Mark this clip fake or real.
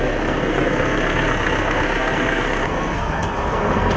fake